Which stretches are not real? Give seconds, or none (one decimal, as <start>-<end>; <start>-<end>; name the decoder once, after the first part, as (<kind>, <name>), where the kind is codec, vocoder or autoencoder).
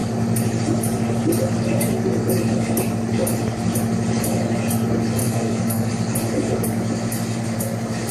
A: 5.2-5.9 (codec, SNAC)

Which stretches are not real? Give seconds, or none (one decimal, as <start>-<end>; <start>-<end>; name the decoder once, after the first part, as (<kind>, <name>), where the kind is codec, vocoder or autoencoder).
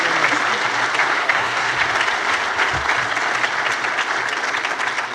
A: 1.2-1.7 (codec, SNAC)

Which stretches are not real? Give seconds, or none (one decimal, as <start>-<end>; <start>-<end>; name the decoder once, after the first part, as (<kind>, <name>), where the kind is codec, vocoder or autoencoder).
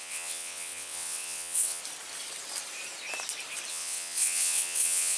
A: 0.0-1.8 (vocoder, WaveNeXt); 3.7-5.2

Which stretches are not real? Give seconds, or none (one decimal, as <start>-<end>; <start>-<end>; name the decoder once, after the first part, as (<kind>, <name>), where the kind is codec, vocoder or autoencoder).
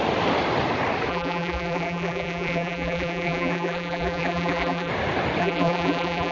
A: 1.1-4.9 (vocoder, BigVGAN v2); 5.4-6.3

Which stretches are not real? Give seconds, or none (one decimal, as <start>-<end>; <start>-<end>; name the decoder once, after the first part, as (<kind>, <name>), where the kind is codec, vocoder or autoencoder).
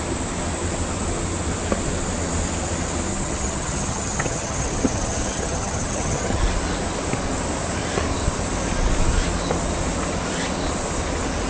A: 3.1-6.4 (vocoder, HiFi-GAN)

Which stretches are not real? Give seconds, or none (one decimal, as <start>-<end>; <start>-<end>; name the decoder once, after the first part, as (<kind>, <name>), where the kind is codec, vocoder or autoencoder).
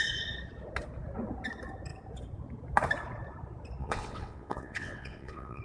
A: 3.8-5.6 (vocoder, WaveNeXt)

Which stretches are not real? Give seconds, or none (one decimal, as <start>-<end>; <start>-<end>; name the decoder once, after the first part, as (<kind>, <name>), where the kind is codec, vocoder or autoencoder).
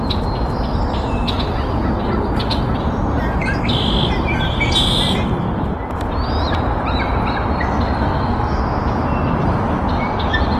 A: 8.0-8.6 (codec, SNAC)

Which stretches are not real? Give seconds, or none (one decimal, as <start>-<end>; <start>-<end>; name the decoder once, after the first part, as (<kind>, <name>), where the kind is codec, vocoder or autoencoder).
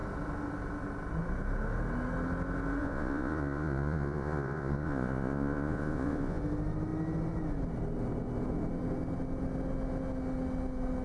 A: 2.8-6.4 (vocoder, Vocos)